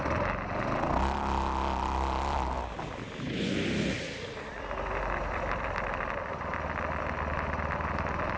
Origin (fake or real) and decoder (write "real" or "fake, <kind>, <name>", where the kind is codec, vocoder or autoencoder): real